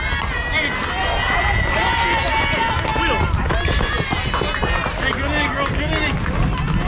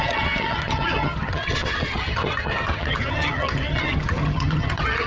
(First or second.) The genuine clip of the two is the first